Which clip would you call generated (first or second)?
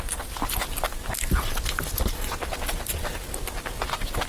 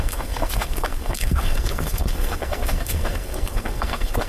second